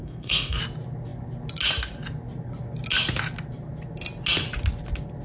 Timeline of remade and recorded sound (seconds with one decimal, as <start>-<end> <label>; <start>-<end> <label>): 0.0-0.6 remade; 0.6-5.2 recorded